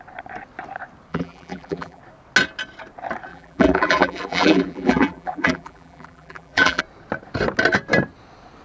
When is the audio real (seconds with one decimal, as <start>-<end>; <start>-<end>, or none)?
0.0-1.1; 2.0-3.3; 6.8-8.6